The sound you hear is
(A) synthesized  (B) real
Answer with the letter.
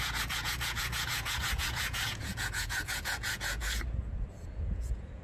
A